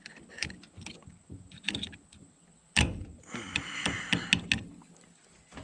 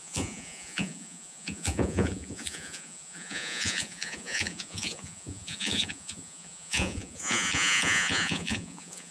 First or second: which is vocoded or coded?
second